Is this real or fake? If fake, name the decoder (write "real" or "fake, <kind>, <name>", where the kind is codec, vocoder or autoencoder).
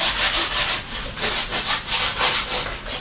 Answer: real